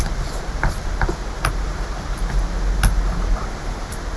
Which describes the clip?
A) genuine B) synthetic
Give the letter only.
A